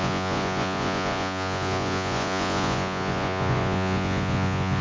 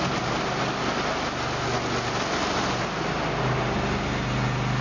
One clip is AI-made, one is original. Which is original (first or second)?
second